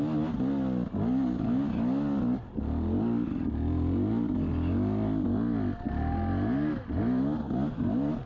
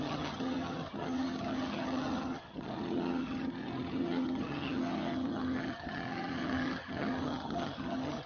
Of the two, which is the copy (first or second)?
second